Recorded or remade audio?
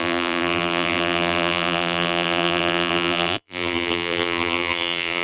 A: remade